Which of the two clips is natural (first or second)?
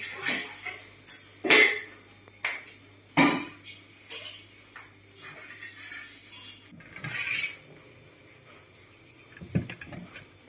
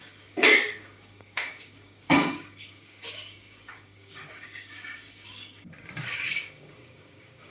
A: first